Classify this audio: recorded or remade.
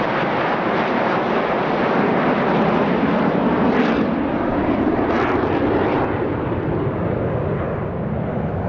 recorded